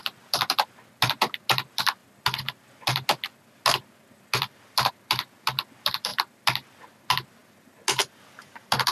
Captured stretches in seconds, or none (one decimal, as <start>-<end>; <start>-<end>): 0.0-8.9